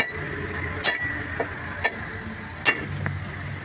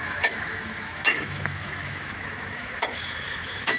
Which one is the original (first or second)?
first